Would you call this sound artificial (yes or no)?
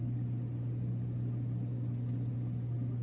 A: no